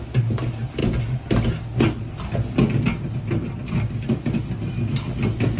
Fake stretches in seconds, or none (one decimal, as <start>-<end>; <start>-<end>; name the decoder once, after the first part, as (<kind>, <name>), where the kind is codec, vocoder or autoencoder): none